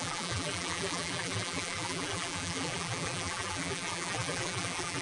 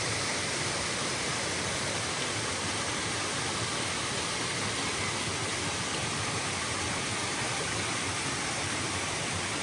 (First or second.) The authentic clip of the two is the second